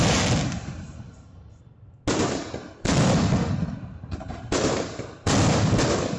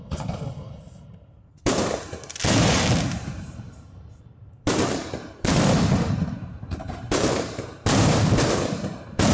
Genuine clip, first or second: first